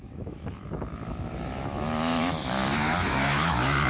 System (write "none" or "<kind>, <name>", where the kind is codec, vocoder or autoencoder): autoencoder, DAC-VAE